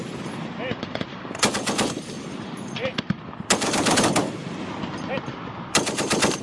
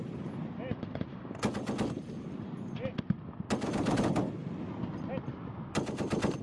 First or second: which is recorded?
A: second